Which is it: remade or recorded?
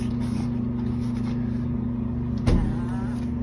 recorded